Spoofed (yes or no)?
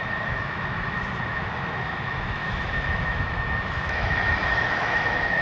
yes